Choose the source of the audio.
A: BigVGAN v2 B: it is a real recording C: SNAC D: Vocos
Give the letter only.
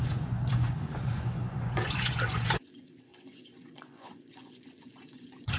D